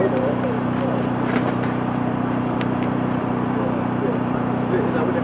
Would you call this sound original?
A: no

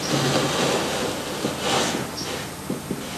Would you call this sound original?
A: yes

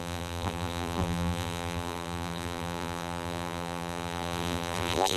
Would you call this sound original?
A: no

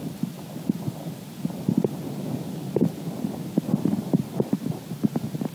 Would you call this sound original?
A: yes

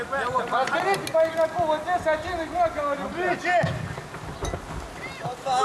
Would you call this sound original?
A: yes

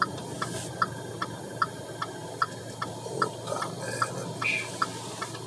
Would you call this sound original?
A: yes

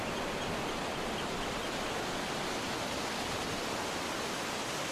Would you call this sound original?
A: yes